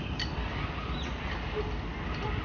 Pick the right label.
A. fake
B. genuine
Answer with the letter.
B